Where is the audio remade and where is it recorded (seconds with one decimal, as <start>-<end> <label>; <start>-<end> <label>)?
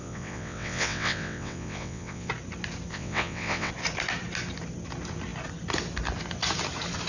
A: 0.0-2.3 remade; 2.3-2.9 recorded; 2.9-3.7 remade; 3.7-7.1 recorded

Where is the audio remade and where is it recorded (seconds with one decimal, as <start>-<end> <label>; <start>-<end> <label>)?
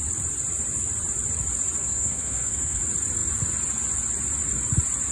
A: 0.0-1.8 recorded; 1.8-2.8 remade; 2.8-5.1 recorded